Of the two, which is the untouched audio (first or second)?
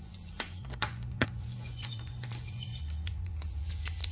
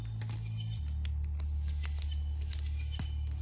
second